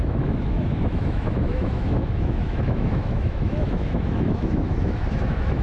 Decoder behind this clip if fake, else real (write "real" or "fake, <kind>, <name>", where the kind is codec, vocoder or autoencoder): fake, autoencoder, DAC-VAE